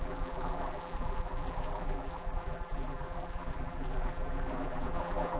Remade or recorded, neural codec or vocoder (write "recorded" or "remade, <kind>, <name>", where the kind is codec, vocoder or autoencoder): remade, vocoder, BigVGAN v2